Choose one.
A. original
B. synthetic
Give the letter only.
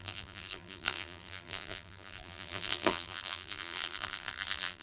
B